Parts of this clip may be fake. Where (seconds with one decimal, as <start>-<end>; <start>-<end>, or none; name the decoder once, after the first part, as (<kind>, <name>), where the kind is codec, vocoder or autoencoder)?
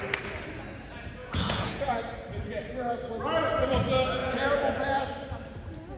1.2-2.0 (vocoder, Vocos); 4.2-5.0